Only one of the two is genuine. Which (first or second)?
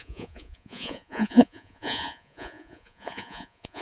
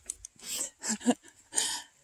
second